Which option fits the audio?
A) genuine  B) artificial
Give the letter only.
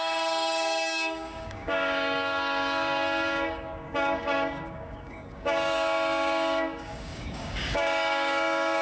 B